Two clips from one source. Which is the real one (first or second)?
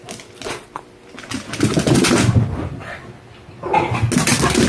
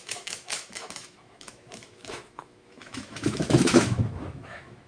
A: first